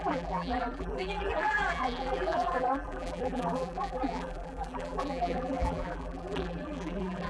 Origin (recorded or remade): remade